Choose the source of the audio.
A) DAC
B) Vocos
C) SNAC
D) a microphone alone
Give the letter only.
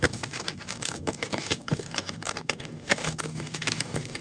A